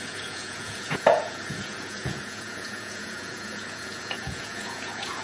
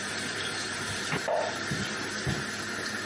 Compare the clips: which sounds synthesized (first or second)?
first